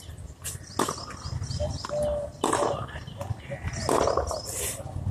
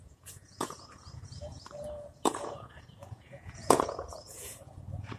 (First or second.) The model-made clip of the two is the second